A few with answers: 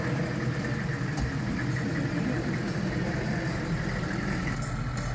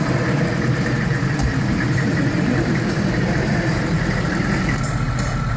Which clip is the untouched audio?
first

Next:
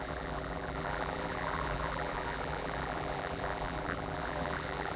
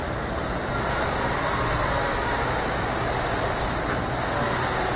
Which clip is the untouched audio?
second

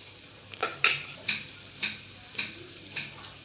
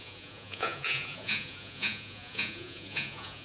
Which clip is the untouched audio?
first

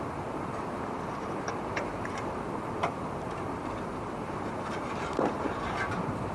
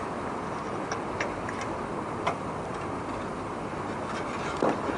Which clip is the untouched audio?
second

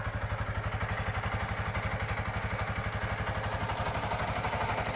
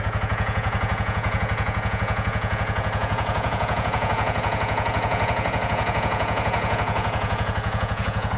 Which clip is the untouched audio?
first